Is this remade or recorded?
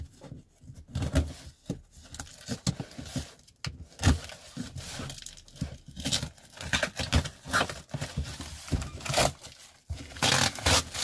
recorded